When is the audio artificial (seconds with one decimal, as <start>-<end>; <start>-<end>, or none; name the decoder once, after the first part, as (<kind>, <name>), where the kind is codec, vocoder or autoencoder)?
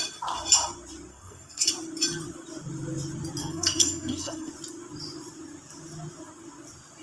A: 1.1-1.7 (codec, SNAC); 3.4-4.5